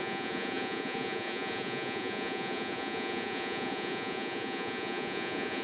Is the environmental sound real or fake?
fake